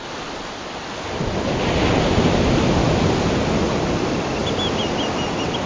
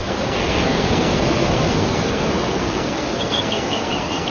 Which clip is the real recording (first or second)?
first